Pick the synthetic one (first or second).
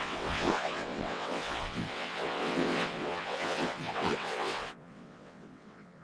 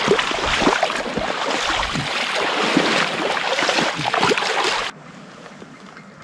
first